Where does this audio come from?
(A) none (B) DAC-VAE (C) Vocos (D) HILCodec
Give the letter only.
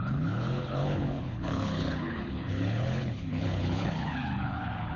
D